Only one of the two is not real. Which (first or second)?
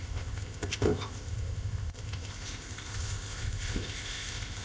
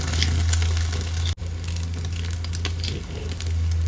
first